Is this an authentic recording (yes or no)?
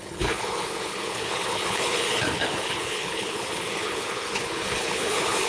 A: no